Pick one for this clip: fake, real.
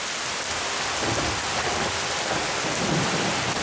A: real